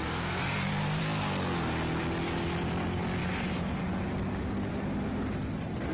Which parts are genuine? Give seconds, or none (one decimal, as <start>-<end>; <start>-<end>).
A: 1.0-3.2; 3.8-5.9